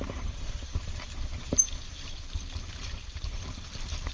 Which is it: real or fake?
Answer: fake